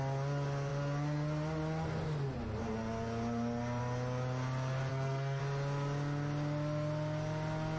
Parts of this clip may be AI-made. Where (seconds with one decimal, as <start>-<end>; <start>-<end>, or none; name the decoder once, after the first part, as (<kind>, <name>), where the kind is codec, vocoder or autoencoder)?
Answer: 4.9-5.4 (codec, SNAC)